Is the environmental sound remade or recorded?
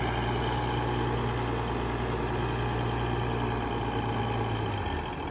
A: recorded